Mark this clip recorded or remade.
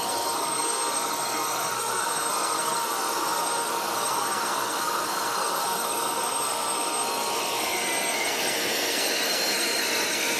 remade